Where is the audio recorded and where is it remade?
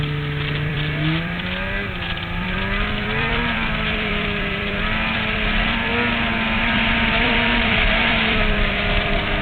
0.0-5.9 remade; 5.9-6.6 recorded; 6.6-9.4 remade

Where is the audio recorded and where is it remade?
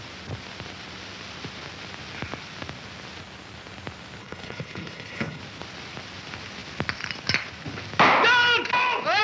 0.0-4.2 recorded; 4.2-5.4 remade; 5.4-9.2 recorded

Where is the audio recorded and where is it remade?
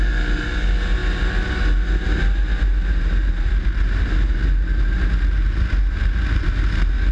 0.0-7.1 recorded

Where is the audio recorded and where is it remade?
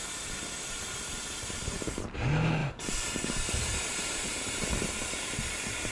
0.0-2.6 recorded; 2.6-4.7 remade; 4.7-5.9 recorded